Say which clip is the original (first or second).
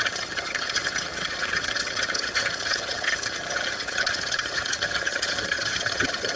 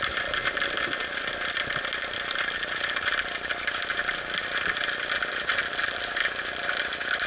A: second